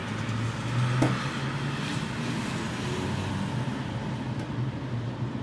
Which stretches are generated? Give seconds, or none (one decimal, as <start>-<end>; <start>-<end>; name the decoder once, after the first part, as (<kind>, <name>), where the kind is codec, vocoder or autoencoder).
none

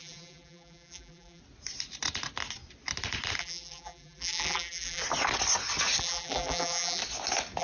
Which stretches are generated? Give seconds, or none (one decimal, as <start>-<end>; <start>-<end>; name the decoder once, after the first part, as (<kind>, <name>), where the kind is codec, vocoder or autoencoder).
0.0-1.4 (vocoder, BigVGAN v2); 3.4-5.0; 6.0-7.0